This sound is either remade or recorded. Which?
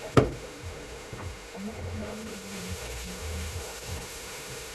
remade